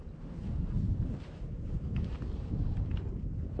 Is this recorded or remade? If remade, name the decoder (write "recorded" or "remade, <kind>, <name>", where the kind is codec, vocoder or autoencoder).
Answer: recorded